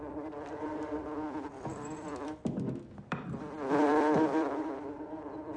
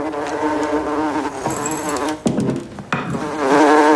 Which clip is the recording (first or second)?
second